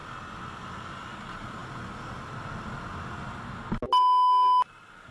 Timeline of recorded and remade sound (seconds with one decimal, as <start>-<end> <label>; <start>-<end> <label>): 0.0-5.1 recorded